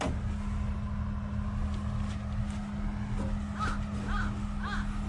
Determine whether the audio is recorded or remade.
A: recorded